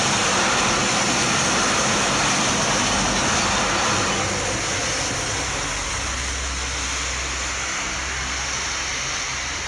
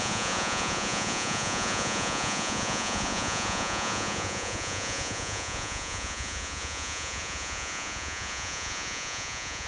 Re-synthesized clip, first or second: second